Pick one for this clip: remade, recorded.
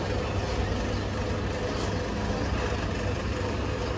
recorded